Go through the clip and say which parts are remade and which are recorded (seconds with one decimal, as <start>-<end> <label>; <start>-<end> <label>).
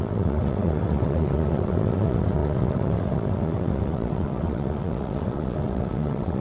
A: 0.0-6.4 remade